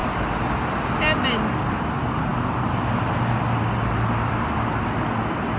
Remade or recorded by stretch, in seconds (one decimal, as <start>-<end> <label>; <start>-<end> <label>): 0.0-5.6 recorded

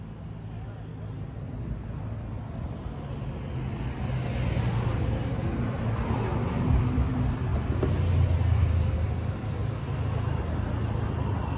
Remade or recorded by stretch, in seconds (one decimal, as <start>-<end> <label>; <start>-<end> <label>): 0.0-11.6 recorded

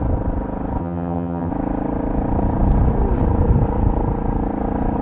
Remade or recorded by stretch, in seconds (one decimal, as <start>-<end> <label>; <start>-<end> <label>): 0.0-0.8 recorded; 0.8-1.5 remade; 1.5-5.0 recorded

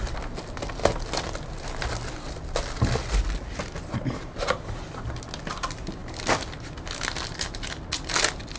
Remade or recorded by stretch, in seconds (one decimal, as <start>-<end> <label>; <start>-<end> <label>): 0.0-8.6 recorded

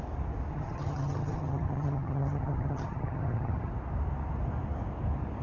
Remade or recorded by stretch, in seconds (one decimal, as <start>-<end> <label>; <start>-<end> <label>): 0.0-0.5 recorded; 0.5-3.7 remade; 3.7-5.4 recorded

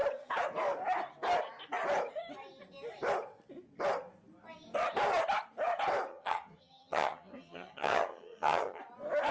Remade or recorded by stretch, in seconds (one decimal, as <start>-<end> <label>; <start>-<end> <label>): 0.0-6.1 recorded; 6.1-8.8 remade; 8.8-9.3 recorded